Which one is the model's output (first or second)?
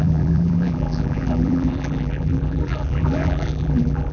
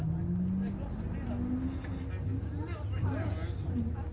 first